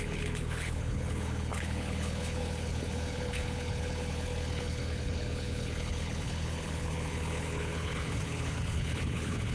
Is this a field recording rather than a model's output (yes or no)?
no